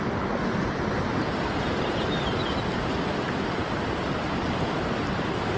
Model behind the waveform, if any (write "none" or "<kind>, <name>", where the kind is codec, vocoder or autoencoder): none